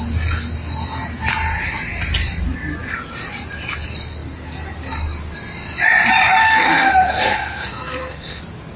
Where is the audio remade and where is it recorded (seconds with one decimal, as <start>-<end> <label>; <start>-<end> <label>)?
0.0-6.4 recorded; 6.4-8.4 remade; 8.4-8.8 recorded